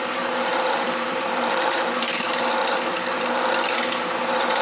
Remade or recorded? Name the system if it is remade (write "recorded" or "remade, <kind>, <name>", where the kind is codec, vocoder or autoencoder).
remade, vocoder, BigVGAN v2